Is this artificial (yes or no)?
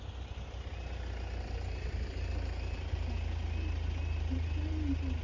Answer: no